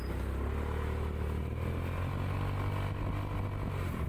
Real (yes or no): yes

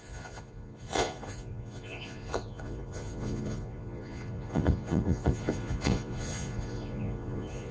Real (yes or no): no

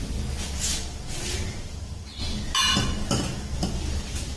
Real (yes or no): yes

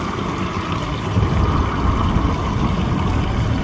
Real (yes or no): yes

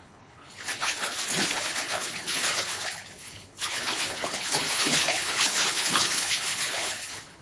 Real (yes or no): no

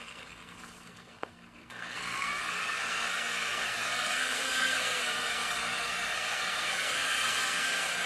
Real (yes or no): no